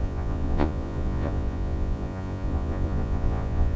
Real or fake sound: fake